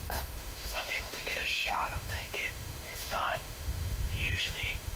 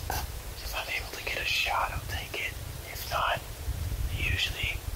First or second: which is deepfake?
first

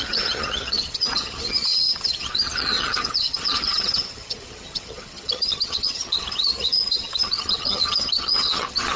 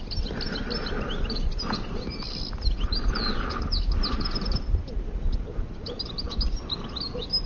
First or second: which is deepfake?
first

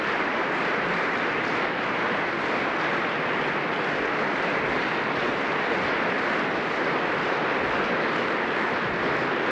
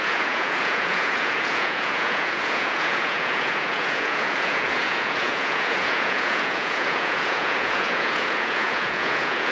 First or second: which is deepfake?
second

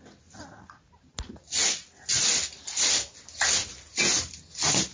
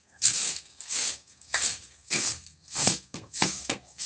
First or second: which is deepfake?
second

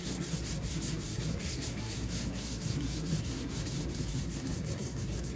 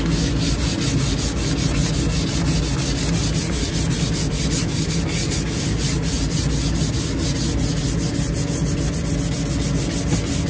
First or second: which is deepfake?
first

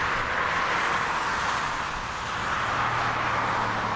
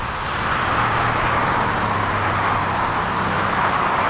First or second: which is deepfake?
second